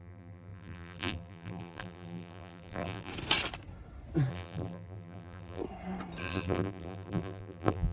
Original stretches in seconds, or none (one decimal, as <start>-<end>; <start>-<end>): 3.1-4.3; 5.6-6.2